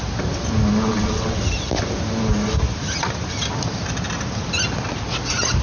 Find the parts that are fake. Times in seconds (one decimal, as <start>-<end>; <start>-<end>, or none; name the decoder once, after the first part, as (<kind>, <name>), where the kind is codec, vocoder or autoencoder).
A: 0.9-1.4 (vocoder, WaveNeXt)